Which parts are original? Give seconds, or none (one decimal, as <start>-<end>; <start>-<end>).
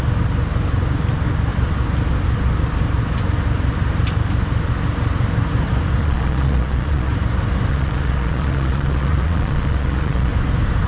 0.0-6.0; 7.1-7.7; 10.3-10.9